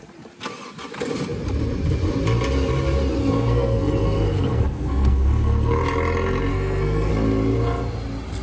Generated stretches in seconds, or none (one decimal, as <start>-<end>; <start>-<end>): 3.2-5.8; 6.5-7.1